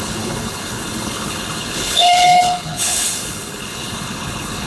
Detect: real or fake fake